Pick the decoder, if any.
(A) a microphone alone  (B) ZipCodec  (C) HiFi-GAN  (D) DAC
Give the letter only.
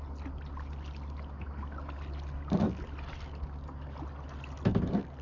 A